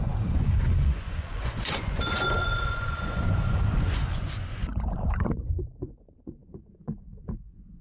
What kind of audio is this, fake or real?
fake